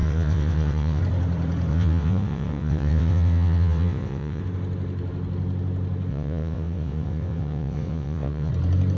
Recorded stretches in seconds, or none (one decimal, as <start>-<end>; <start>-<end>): 1.0-1.7; 4.4-6.1; 8.5-9.0